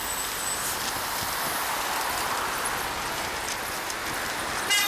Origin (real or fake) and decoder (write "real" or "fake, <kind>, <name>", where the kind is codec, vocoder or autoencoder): real